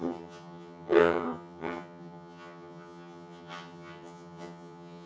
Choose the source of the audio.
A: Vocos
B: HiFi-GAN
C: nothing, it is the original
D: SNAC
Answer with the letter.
B